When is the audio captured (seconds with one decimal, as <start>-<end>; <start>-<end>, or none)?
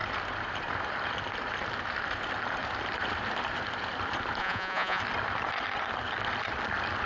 0.0-4.4; 5.0-7.1